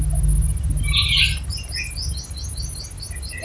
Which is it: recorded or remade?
recorded